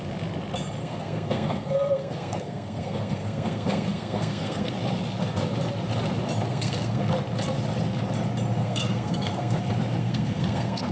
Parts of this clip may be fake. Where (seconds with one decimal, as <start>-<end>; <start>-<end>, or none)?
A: 0.8-4.7; 6.5-7.1; 8.6-9.6; 10.0-10.9